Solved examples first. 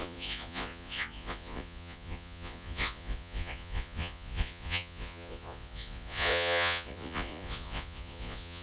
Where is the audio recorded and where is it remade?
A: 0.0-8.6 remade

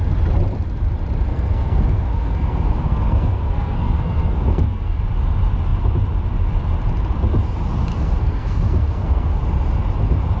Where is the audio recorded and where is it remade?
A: 0.0-1.3 recorded; 1.3-5.0 remade; 5.0-7.9 recorded; 7.9-9.4 remade; 9.4-10.4 recorded

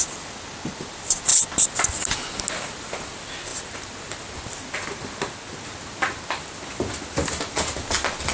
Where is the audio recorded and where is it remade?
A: 0.0-8.3 recorded